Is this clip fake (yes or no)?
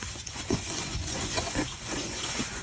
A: yes